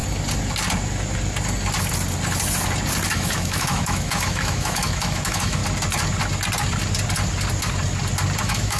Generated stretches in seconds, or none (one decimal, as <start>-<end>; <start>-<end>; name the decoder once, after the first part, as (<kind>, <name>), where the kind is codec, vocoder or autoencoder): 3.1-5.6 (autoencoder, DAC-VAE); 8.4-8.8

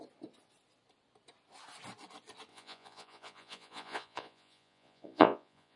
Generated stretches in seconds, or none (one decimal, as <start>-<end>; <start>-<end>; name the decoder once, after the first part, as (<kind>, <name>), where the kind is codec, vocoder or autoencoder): 2.5-5.8 (vocoder, Vocos)

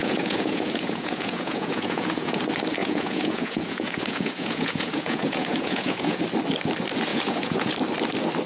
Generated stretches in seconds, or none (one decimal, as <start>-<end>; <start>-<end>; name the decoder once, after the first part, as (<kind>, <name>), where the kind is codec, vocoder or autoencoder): 0.0-2.4 (vocoder, Vocos); 2.8-6.2; 7.1-7.7